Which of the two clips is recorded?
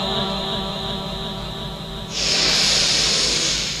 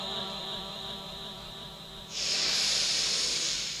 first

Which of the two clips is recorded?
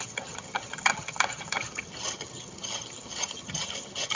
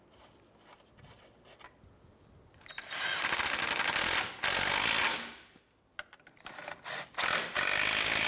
second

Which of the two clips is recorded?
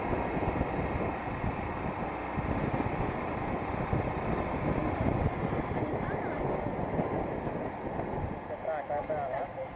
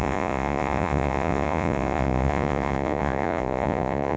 first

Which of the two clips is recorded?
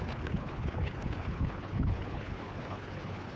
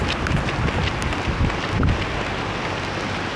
second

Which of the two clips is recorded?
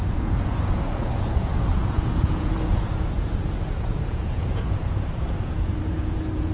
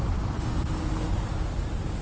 second